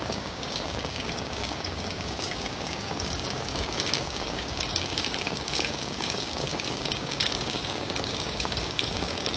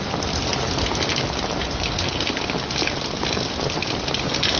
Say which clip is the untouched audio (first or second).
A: second